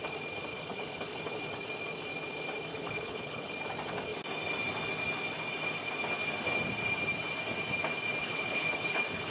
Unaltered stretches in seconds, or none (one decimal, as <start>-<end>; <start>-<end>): 0.0-0.5; 1.4-2.7; 3.5-8.2